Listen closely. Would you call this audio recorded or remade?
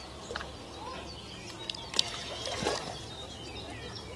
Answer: recorded